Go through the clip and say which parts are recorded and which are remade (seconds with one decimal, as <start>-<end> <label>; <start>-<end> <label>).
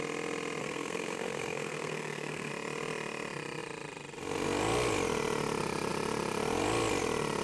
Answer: 0.0-0.6 recorded; 0.6-2.5 remade; 2.5-7.4 recorded